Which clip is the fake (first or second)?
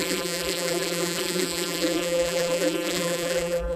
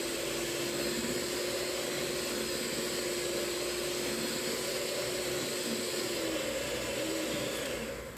first